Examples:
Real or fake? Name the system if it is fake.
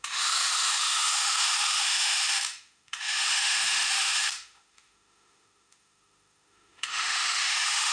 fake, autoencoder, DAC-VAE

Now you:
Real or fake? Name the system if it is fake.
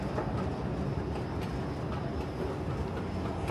real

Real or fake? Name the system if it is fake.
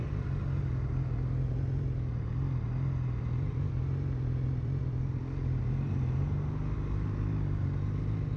real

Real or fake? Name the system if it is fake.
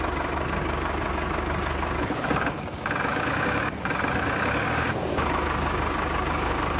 fake, codec, DAC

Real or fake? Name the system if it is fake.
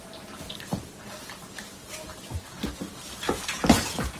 real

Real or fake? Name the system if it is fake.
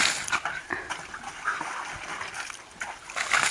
real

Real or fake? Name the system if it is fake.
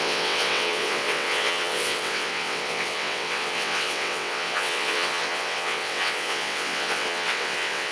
fake, vocoder, WaveNeXt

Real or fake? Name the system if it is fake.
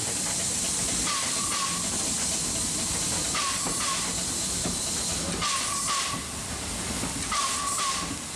real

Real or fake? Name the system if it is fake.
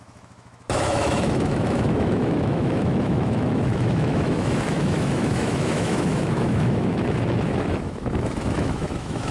fake, autoencoder, DAC-VAE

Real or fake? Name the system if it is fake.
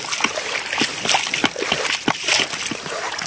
real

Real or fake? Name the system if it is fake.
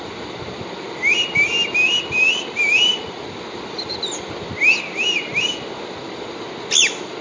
real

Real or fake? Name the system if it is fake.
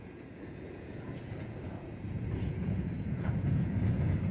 fake, vocoder, Vocos